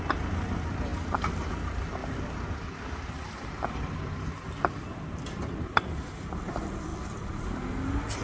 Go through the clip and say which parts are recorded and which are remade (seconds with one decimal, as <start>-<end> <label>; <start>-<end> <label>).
0.0-2.0 remade; 2.0-3.7 recorded; 3.7-8.2 remade